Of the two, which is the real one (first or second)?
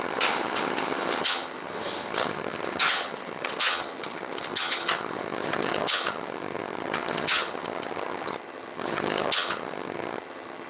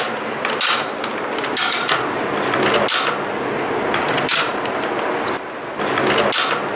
second